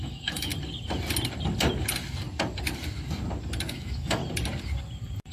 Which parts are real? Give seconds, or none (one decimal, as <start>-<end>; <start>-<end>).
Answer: 0.5-3.7; 4.2-5.3